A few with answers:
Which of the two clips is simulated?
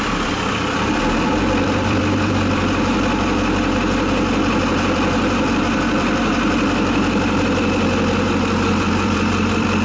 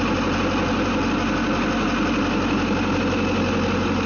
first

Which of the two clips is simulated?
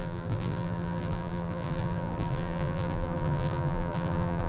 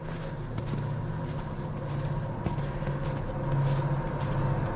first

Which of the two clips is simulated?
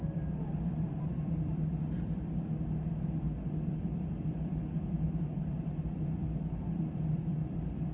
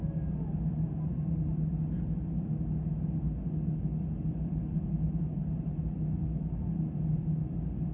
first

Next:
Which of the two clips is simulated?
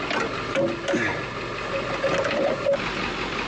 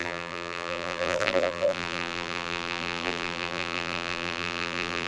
second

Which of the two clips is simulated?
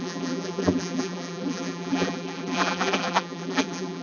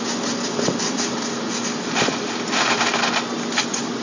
first